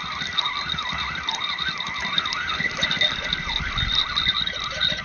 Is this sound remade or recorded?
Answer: recorded